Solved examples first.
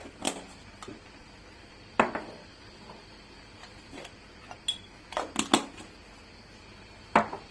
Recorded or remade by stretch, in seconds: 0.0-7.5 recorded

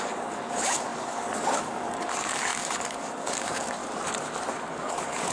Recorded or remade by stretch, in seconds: 0.0-3.8 remade; 3.8-4.7 recorded; 4.7-5.3 remade

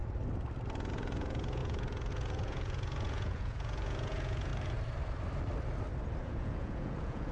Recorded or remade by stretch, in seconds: 0.0-0.9 recorded; 0.9-4.5 remade; 4.5-6.2 recorded; 6.2-7.3 remade

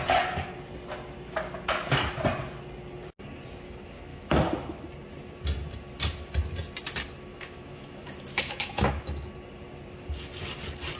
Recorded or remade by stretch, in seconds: 0.0-4.1 recorded; 4.1-4.8 remade; 4.8-7.3 recorded; 7.3-9.3 remade; 9.3-11.0 recorded